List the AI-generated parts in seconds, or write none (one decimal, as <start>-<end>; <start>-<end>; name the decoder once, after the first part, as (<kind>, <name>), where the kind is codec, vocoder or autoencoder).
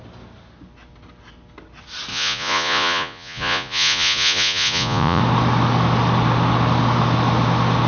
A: 2.1-5.2 (vocoder, Vocos)